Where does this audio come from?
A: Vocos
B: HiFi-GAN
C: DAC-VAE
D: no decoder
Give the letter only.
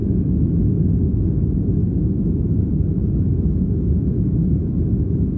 C